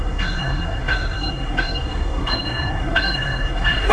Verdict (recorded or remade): remade